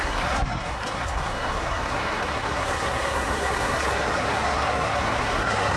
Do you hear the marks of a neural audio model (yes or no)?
yes